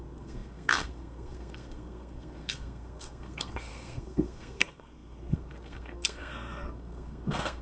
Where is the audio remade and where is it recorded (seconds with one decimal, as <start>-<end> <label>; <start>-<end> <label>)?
0.0-7.6 remade